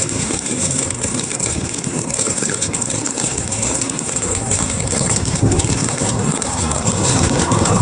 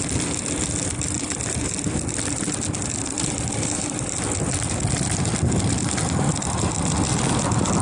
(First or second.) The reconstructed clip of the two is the first